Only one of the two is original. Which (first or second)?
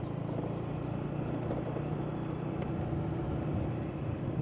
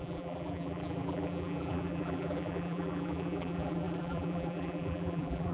first